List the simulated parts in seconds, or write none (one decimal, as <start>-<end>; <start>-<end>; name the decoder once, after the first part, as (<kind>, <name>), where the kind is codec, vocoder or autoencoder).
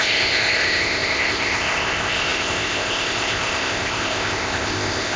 0.0-5.2 (codec, ZipCodec)